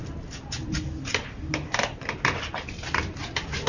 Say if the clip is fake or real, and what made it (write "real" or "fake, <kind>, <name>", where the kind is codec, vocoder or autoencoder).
real